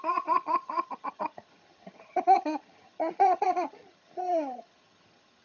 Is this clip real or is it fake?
fake